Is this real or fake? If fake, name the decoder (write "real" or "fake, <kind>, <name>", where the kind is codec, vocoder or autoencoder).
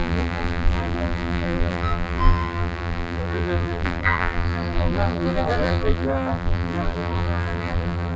fake, vocoder, BigVGAN v2